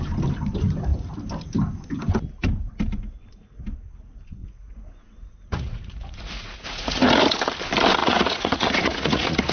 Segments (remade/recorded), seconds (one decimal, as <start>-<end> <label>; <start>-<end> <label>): 0.0-4.4 recorded; 4.4-7.1 remade; 7.1-8.0 recorded; 8.0-9.5 remade